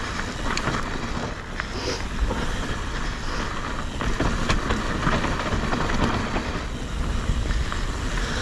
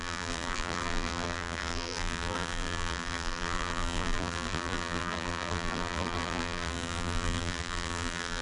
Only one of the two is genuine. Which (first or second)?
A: first